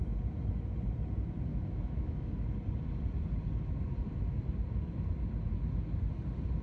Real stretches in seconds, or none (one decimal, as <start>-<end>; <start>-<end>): 0.0-1.5; 2.3-6.6